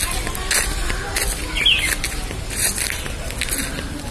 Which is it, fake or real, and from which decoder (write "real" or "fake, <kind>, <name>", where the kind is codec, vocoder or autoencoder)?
real